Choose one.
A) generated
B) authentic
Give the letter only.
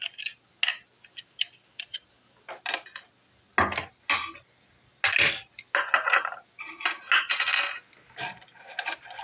B